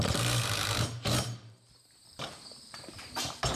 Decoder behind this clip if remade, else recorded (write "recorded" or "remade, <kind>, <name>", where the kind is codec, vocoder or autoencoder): remade, vocoder, BigVGAN v2